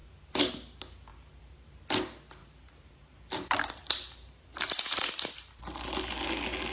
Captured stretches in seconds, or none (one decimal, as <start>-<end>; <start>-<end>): 0.5-1.1; 1.7-2.4; 5.6-6.7